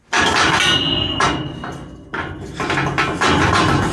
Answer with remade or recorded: recorded